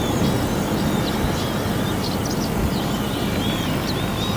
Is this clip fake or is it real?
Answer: real